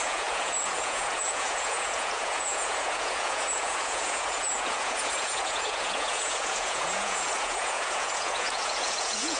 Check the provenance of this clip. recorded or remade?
remade